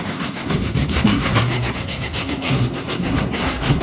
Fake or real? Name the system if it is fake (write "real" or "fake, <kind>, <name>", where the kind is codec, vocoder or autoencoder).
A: fake, codec, SNAC